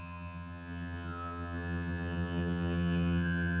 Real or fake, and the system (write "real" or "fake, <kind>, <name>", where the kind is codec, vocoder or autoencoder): fake, vocoder, HiFi-GAN